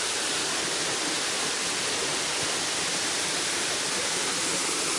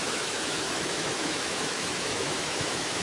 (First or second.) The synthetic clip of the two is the second